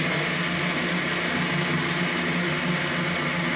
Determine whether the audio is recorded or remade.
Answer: recorded